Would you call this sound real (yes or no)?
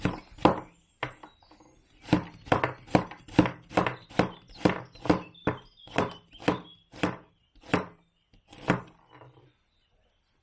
yes